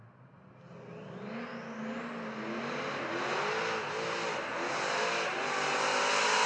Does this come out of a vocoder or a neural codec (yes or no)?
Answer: no